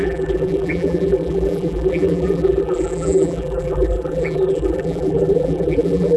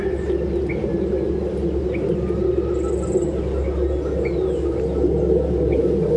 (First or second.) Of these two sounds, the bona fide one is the second